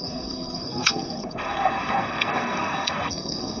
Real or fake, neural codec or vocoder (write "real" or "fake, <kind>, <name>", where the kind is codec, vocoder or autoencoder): fake, codec, SNAC